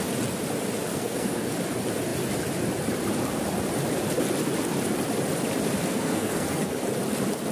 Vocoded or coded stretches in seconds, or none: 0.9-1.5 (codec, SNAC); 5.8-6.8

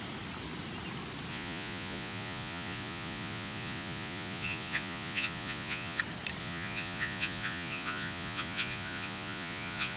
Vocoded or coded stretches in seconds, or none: 1.3-6.0 (vocoder, Vocos); 6.4-10.0

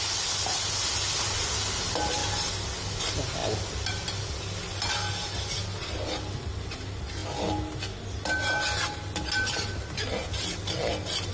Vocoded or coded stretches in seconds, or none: none

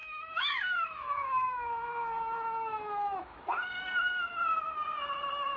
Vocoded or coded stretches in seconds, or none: 0.0-3.4 (autoencoder, DAC-VAE)

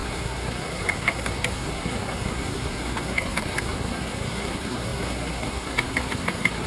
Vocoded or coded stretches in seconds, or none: 0.0-6.7 (codec, SNAC)